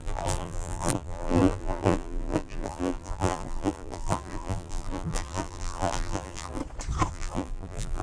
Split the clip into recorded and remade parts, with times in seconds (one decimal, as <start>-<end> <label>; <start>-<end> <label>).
0.0-6.6 remade; 6.6-7.1 recorded; 7.1-8.0 remade